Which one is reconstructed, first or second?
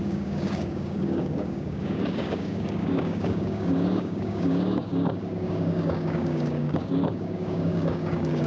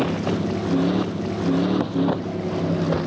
first